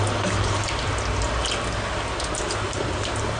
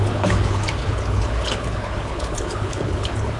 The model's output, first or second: second